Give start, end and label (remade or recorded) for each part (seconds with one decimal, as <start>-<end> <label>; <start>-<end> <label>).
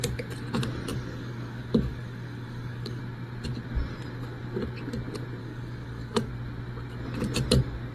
0.0-0.9 recorded; 0.9-3.0 remade; 3.0-5.4 recorded; 5.4-6.3 remade; 6.3-7.9 recorded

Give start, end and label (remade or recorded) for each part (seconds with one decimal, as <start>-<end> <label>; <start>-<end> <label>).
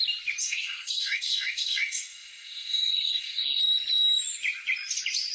0.0-0.4 recorded; 0.4-3.6 remade; 3.6-5.3 recorded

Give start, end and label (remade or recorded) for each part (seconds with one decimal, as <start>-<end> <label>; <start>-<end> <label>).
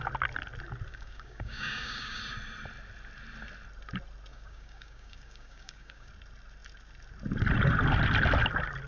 0.0-0.9 recorded; 0.9-2.2 remade; 2.2-4.3 recorded; 4.3-6.1 remade; 6.1-8.9 recorded